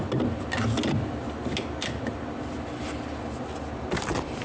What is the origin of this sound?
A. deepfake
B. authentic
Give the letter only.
B